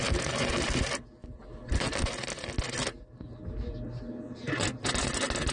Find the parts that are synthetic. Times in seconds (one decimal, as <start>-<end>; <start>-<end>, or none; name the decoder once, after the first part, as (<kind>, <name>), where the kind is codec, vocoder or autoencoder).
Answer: none